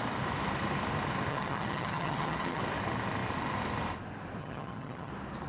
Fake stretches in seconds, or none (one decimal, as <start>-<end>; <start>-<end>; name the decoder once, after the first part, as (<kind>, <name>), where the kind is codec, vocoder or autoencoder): 1.3-2.6 (vocoder, HiFi-GAN); 4.4-5.1